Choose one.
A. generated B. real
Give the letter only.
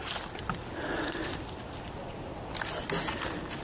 B